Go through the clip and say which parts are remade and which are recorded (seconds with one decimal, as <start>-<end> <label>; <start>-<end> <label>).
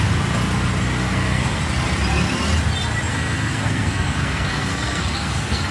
0.0-1.0 recorded; 1.0-1.6 remade; 1.6-3.1 recorded; 3.1-5.7 remade